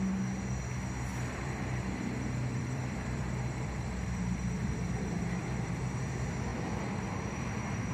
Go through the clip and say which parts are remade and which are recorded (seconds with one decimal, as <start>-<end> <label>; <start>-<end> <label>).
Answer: 0.0-1.1 recorded; 1.1-5.8 remade; 5.8-6.5 recorded; 6.5-7.9 remade